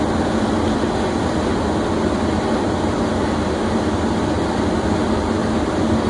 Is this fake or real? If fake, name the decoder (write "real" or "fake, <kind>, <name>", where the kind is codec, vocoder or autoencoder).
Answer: real